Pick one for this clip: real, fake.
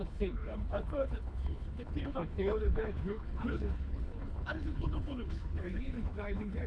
fake